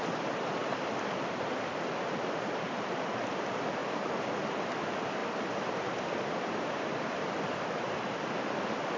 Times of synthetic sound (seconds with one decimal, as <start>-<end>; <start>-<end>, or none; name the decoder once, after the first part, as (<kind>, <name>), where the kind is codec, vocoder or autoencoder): 0.0-3.8 (vocoder, BigVGAN v2); 4.4-9.0